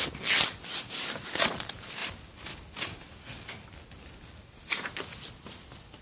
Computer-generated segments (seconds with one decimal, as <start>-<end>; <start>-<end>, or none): none